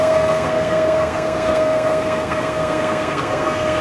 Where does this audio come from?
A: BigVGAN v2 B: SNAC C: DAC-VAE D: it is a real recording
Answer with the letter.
B